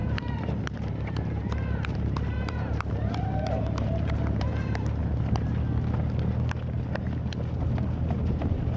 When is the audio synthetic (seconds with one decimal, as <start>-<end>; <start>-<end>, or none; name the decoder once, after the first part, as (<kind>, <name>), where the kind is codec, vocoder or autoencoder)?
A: 0.0-5.0 (vocoder, BigVGAN v2); 8.3-8.8